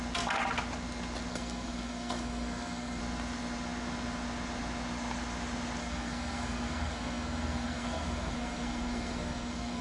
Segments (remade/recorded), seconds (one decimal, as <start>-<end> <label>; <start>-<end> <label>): 0.0-1.3 recorded; 1.3-3.0 remade; 3.0-5.8 recorded; 5.8-9.8 remade